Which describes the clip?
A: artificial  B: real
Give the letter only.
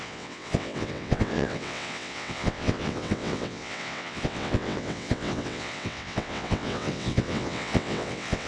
A